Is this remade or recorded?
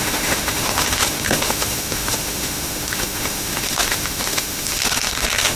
remade